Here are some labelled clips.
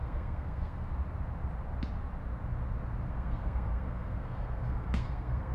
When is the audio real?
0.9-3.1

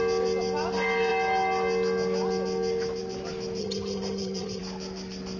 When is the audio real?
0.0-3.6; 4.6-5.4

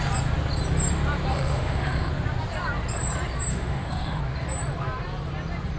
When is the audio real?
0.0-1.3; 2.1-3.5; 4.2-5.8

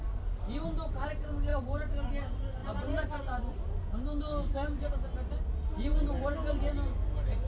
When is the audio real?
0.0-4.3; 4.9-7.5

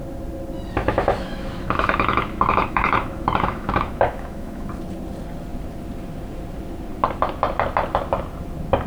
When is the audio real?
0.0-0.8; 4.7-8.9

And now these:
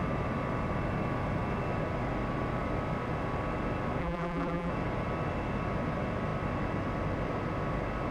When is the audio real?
0.0-4.0; 4.7-8.1

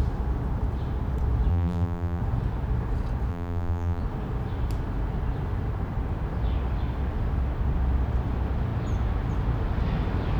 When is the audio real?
0.0-1.5; 2.2-3.3; 4.0-10.4

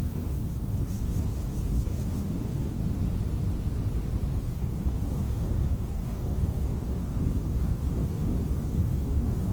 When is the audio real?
2.8-4.4